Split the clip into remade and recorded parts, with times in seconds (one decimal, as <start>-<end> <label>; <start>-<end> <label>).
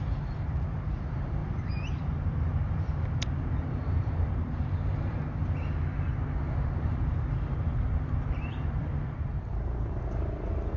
0.0-5.4 remade; 5.4-6.6 recorded; 6.6-10.8 remade